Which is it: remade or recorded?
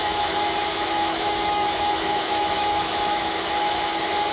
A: remade